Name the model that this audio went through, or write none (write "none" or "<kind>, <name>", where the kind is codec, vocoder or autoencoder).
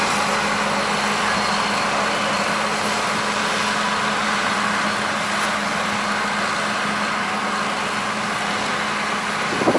none